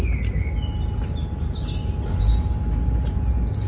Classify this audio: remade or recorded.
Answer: recorded